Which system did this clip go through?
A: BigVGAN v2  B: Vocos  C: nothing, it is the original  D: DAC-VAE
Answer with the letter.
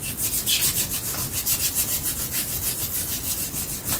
C